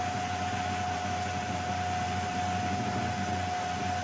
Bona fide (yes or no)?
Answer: yes